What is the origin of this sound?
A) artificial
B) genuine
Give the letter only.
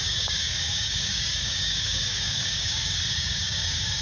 A